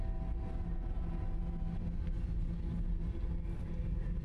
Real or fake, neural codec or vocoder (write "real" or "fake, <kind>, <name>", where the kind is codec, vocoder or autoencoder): real